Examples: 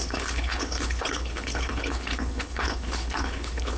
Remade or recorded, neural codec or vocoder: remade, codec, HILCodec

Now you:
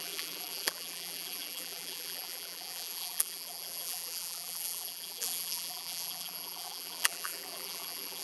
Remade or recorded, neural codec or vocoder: remade, vocoder, BigVGAN v2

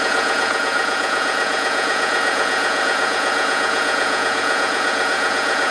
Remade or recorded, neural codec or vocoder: remade, vocoder, Vocos